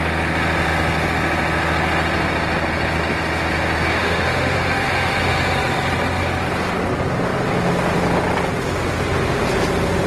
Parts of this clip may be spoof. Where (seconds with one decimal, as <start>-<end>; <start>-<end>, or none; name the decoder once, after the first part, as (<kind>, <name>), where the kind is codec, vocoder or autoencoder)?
4.0-5.2 (autoencoder, DAC-VAE)